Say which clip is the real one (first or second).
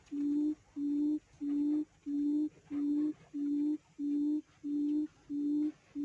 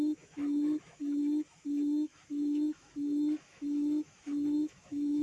first